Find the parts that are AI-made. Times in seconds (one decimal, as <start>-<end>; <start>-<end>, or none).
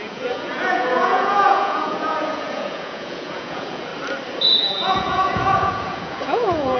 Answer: 0.0-3.9; 4.6-6.8